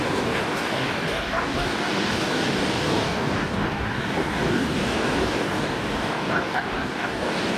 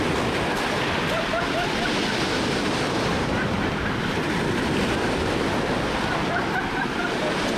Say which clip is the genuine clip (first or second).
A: second